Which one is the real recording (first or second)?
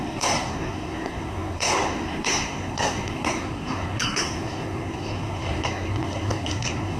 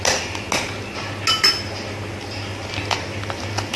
second